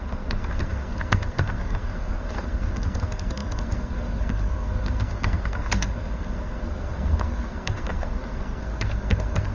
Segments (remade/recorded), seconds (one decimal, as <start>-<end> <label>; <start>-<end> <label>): 0.0-9.5 remade